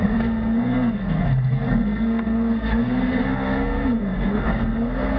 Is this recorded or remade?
remade